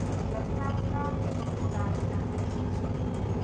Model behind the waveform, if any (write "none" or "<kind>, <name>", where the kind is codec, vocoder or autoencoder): none